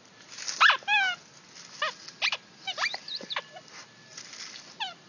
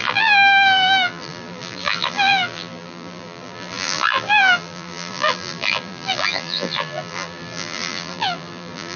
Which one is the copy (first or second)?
second